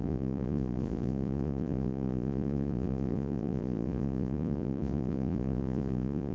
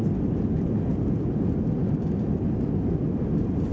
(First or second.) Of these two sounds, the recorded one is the second